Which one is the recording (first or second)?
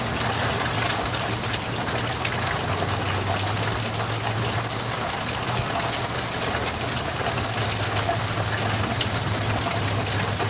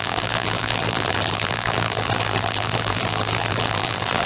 first